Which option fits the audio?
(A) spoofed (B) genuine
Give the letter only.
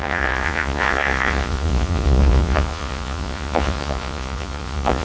A